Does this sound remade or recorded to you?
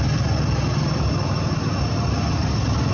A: recorded